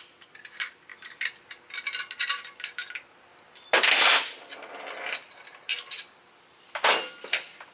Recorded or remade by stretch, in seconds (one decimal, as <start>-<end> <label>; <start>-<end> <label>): 0.0-0.9 remade; 0.9-2.2 recorded; 2.2-5.7 remade; 5.7-6.4 recorded; 6.4-7.7 remade